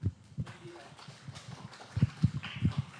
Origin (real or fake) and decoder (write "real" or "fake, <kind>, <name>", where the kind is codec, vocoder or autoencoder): fake, codec, DAC